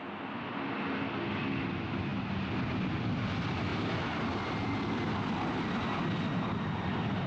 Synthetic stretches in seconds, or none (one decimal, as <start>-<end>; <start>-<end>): none